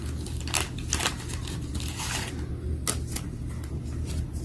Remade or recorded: recorded